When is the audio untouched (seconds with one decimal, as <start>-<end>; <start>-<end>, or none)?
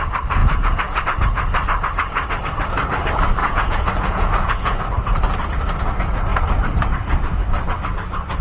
0.0-0.4; 1.0-3.4; 4.8-8.4